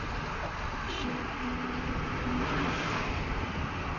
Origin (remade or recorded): recorded